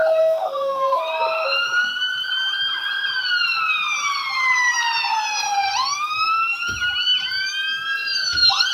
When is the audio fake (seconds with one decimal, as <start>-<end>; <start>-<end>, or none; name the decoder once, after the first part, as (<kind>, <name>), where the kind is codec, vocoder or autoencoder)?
0.0-1.0 (autoencoder, DAC-VAE)